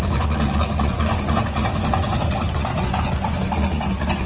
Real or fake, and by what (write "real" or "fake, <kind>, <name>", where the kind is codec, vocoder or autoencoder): fake, vocoder, Vocos